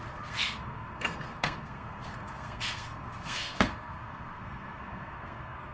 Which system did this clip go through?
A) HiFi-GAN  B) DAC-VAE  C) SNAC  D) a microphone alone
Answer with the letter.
C